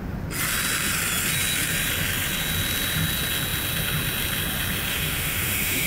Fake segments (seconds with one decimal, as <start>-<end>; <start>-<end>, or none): 4.9-5.9